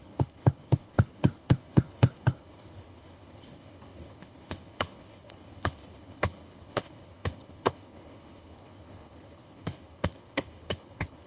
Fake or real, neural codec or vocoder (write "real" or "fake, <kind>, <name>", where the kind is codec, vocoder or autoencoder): fake, codec, HILCodec